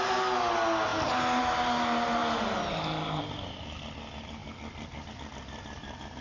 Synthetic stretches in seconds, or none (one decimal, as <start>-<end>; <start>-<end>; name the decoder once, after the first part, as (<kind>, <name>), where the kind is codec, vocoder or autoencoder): none